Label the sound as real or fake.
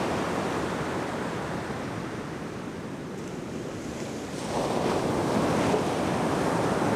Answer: real